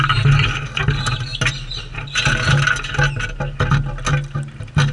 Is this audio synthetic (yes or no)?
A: no